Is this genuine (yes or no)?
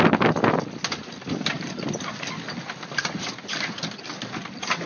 yes